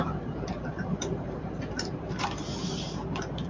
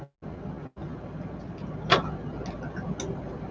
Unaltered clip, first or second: second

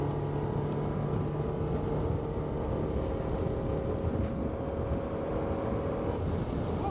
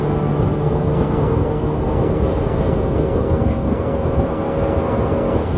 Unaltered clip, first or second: first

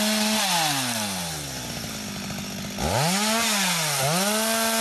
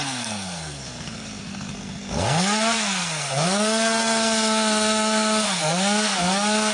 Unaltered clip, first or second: first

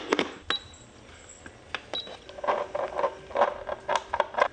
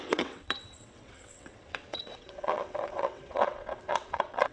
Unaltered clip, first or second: first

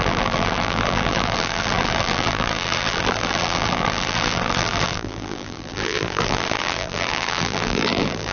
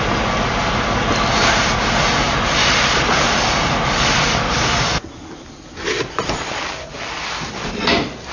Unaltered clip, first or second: second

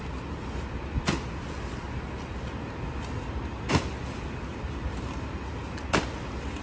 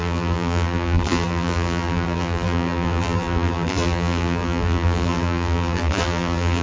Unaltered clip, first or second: first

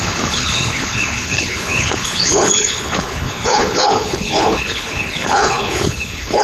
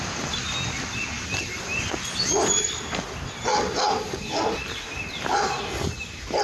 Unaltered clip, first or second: second